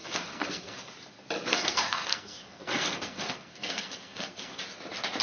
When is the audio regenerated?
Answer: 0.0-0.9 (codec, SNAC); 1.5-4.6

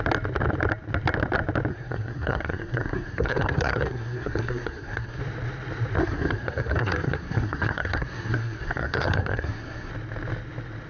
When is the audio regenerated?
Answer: 1.7-5.2 (codec, SNAC); 6.0-9.9

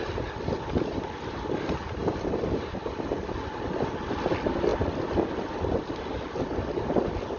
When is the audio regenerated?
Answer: none

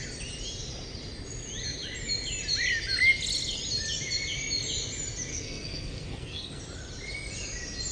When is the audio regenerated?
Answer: 5.3-6.6 (codec, SNAC)